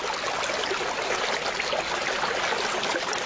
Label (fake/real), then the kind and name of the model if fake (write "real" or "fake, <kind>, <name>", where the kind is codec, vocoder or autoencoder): real